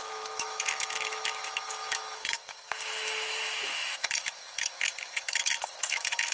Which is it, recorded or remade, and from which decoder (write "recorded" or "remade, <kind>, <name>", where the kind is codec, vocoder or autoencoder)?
remade, autoencoder, DAC-VAE